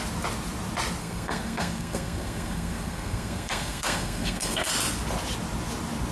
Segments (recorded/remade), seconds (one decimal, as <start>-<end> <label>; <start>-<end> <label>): 0.0-1.0 recorded; 1.0-4.7 remade; 4.7-6.1 recorded